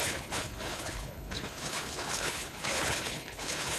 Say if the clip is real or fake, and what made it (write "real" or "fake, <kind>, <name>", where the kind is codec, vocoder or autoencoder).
fake, codec, HILCodec